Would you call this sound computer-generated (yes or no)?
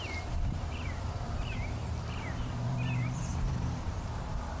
yes